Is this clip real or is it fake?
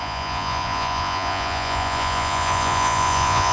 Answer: fake